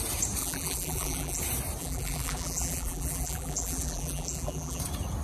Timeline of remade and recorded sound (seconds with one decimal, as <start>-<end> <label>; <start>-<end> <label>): 0.0-0.4 recorded; 0.4-1.4 remade; 1.4-1.8 recorded; 1.8-4.8 remade; 4.8-5.2 recorded